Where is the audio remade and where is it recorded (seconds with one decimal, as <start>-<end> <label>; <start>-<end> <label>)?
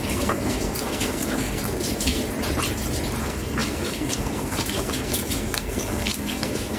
0.0-2.2 remade; 2.2-3.2 recorded; 3.2-6.8 remade